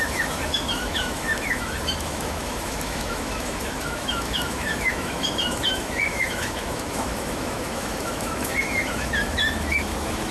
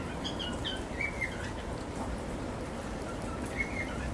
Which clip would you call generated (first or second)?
first